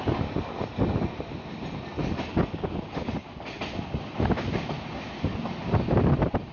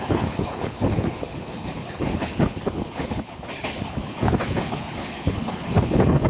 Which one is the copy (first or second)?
second